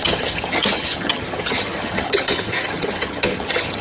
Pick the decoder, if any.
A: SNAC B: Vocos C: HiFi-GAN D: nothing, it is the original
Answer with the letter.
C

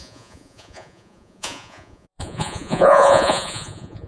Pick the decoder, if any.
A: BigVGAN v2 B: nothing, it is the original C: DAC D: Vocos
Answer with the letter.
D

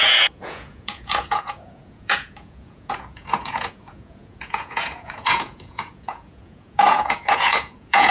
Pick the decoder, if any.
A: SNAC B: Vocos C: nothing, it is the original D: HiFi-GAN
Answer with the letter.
B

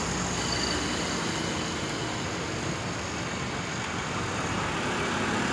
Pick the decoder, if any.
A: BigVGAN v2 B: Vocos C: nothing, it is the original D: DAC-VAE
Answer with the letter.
C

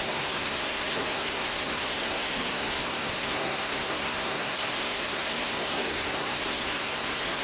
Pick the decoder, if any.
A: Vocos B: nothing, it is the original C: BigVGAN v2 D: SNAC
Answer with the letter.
D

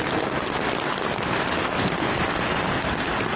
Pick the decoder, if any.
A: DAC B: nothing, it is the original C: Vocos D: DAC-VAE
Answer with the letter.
B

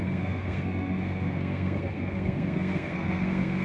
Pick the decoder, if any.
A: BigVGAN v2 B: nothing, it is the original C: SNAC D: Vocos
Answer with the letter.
C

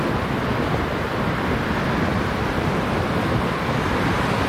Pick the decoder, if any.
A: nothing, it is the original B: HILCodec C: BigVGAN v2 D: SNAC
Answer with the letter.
C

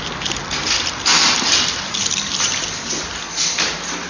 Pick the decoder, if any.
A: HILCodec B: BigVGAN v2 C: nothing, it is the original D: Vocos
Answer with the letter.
C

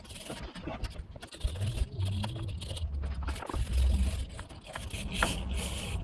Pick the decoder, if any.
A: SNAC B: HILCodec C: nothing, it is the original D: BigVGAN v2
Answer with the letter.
C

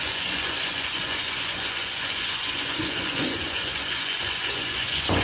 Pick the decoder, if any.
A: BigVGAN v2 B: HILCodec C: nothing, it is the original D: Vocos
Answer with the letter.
D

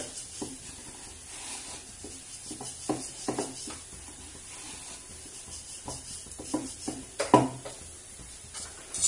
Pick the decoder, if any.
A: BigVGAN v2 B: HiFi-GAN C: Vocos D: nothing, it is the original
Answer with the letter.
D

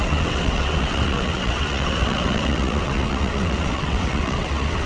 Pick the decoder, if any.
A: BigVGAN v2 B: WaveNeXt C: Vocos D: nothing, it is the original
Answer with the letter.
B